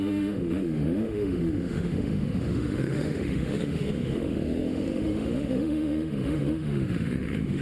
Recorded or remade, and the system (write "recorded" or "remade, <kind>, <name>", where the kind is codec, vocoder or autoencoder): remade, autoencoder, DAC-VAE